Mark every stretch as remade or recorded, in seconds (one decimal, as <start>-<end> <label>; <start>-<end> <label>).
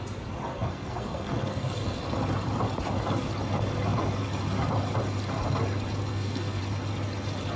0.0-0.5 recorded; 0.5-2.0 remade; 2.0-6.1 recorded; 6.1-6.6 remade; 6.6-7.6 recorded